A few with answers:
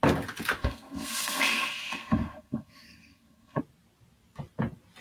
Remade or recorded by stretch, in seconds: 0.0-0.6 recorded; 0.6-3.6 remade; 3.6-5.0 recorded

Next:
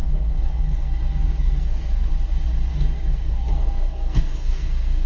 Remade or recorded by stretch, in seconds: 0.0-2.1 remade; 2.1-2.7 recorded; 2.7-5.1 remade

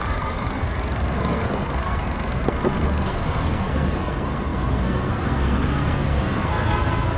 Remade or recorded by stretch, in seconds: 0.0-7.2 remade

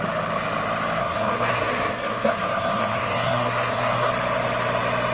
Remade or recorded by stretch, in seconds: 0.0-1.0 recorded; 1.0-4.1 remade; 4.1-5.1 recorded

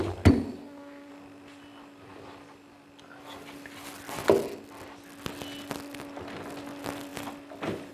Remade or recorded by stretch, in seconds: 0.0-0.6 recorded; 0.6-1.1 remade; 1.1-7.9 recorded